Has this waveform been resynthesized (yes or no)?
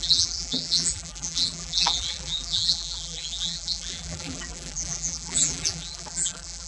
yes